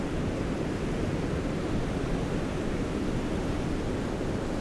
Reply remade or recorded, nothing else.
recorded